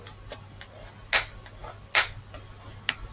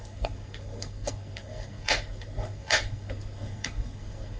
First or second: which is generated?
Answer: second